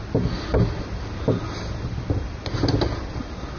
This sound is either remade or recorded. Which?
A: recorded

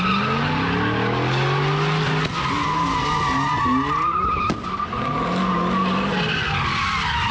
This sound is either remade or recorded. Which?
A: recorded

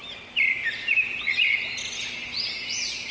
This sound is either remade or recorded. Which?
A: recorded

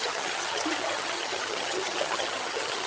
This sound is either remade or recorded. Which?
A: remade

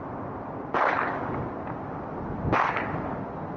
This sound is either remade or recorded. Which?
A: recorded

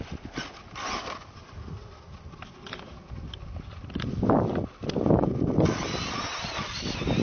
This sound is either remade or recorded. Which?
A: recorded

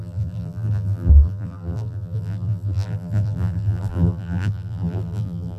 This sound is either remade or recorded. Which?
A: remade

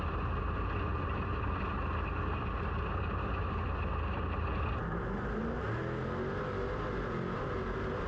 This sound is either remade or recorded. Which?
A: recorded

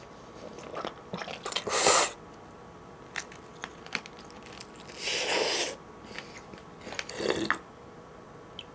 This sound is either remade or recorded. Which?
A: recorded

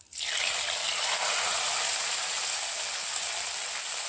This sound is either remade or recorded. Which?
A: recorded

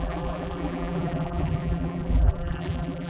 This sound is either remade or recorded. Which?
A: remade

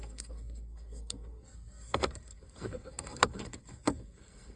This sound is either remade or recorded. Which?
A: remade